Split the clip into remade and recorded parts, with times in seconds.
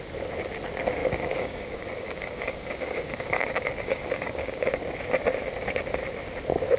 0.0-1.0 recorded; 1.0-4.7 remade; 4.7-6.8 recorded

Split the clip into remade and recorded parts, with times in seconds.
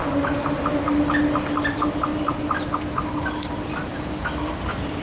0.0-5.0 recorded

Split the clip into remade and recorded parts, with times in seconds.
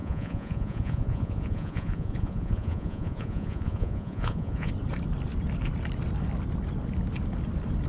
0.0-4.7 remade; 4.7-7.9 recorded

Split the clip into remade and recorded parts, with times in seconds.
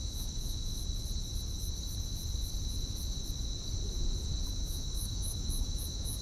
0.0-0.8 remade; 0.8-4.5 recorded; 4.5-6.2 remade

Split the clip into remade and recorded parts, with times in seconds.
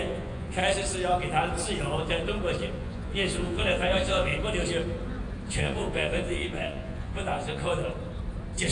0.0-0.6 remade; 0.6-2.7 recorded; 2.7-4.3 remade; 4.3-5.5 recorded; 5.5-7.7 remade; 7.7-8.7 recorded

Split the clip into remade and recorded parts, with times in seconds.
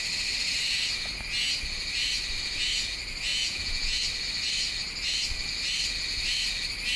0.0-3.3 recorded; 3.3-4.0 remade; 4.0-7.0 recorded